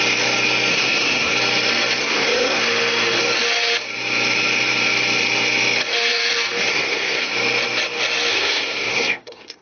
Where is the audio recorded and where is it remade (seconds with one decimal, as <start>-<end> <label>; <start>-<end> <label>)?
0.0-0.7 recorded; 0.7-1.3 remade; 1.3-2.0 recorded; 2.0-2.6 remade; 2.6-6.7 recorded; 6.7-7.3 remade; 7.3-8.3 recorded; 8.3-9.6 remade